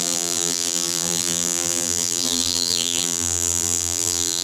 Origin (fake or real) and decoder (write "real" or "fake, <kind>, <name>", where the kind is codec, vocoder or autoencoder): fake, vocoder, BigVGAN v2